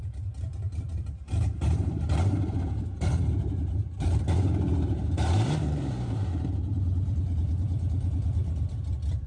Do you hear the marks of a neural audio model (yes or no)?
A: yes